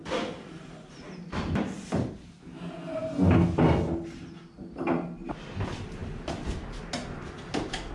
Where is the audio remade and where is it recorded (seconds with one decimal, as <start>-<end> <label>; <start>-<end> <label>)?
0.0-7.9 recorded